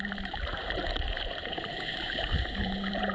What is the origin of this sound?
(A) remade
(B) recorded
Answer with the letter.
A